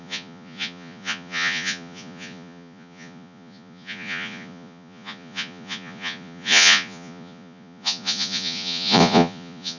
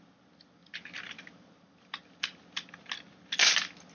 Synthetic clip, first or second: first